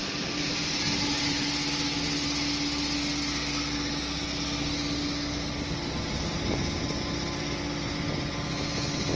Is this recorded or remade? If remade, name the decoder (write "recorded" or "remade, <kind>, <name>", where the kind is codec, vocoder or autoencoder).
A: recorded